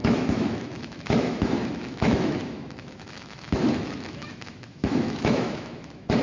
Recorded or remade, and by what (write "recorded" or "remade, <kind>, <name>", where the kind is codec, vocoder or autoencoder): remade, autoencoder, DAC-VAE